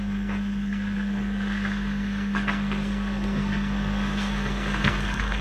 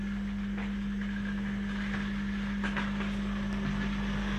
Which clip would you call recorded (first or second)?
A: second